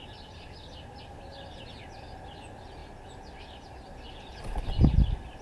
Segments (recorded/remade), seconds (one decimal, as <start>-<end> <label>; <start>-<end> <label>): 0.0-5.4 recorded